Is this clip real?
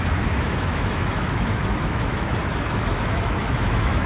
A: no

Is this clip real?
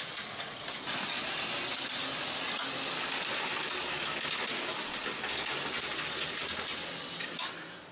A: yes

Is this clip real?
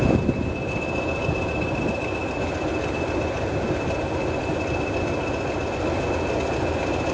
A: yes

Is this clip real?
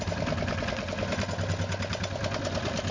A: yes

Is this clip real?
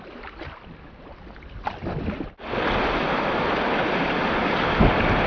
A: yes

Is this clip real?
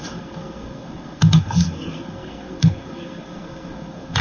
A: no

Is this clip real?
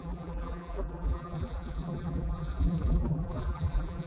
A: no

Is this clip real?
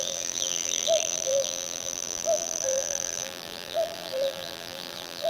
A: no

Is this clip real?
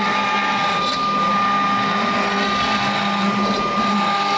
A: yes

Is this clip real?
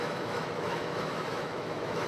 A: no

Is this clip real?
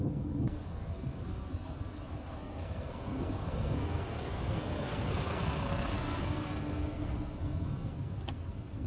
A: no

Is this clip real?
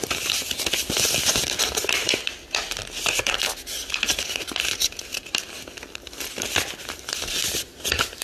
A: yes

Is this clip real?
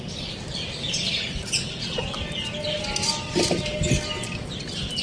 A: yes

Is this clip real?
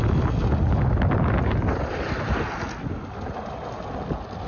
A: yes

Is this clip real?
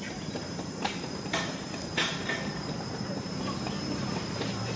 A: no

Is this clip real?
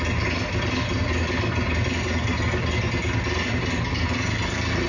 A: yes